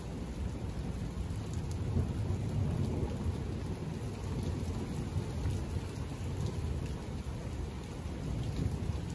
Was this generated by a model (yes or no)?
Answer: no